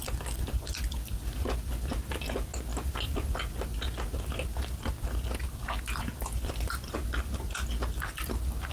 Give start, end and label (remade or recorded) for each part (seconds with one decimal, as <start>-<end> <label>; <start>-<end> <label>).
0.0-8.7 recorded